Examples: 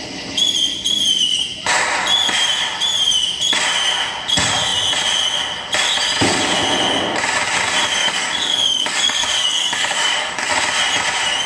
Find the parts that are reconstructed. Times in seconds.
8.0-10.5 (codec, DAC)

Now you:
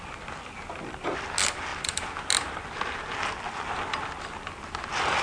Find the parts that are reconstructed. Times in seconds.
none